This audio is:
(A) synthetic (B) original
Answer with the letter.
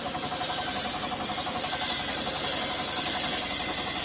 B